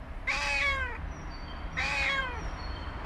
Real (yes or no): no